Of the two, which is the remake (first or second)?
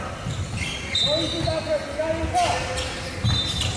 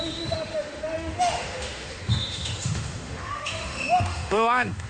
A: second